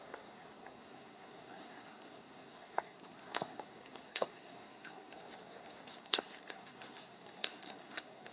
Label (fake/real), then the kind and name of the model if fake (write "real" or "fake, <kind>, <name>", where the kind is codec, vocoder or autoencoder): fake, codec, SNAC